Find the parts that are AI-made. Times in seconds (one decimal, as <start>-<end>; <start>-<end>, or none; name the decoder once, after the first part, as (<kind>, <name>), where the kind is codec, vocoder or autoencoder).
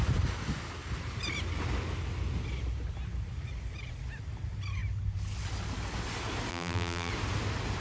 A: 6.5-7.1 (vocoder, BigVGAN v2)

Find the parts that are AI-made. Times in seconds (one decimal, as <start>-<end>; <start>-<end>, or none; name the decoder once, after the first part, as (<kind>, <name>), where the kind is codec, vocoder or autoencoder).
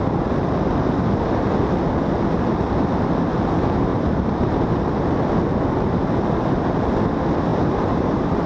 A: 3.9-4.7 (vocoder, BigVGAN v2); 7.5-8.5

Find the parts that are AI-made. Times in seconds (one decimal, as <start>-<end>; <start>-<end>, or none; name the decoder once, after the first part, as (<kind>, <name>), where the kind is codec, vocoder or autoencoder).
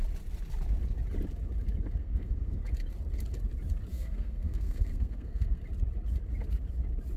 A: 2.0-2.6 (codec, SNAC); 3.9-5.6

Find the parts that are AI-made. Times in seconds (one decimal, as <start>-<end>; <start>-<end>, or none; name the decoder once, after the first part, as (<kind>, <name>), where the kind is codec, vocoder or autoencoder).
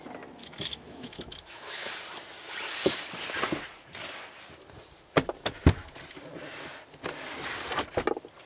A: 0.4-1.9 (autoencoder, DAC-VAE)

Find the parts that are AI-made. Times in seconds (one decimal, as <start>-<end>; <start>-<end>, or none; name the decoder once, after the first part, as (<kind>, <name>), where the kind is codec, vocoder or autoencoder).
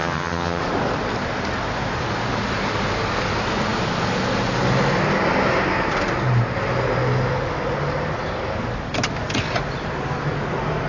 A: 0.0-0.6 (vocoder, HiFi-GAN)